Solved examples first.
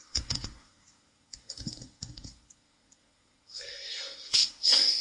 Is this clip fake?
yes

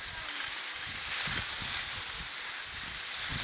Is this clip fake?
no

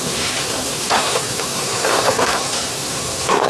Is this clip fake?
yes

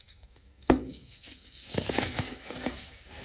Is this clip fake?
yes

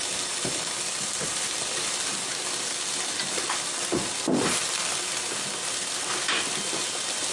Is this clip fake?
no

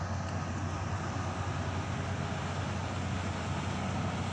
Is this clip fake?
no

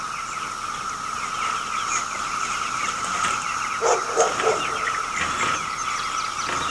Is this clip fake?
no